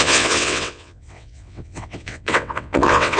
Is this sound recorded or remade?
remade